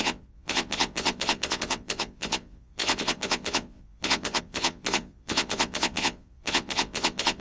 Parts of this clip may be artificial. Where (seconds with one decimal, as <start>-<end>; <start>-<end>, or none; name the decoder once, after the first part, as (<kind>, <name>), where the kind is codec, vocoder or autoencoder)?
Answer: 0.0-7.4 (vocoder, Vocos)